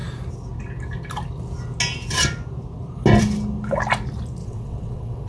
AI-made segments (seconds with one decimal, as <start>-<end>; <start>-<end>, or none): 4.4-5.3